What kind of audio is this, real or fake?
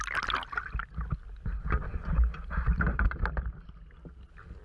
real